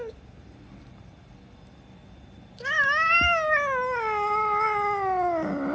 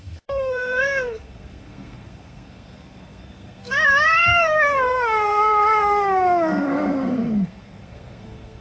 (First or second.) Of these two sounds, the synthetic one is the second